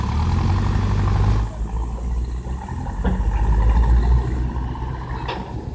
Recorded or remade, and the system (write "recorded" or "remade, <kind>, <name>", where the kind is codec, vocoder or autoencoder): recorded